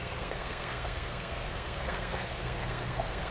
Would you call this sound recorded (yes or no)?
no